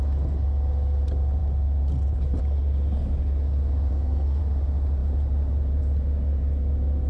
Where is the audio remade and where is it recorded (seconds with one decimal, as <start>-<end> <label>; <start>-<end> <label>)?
0.0-3.9 recorded; 3.9-4.4 remade; 4.4-7.1 recorded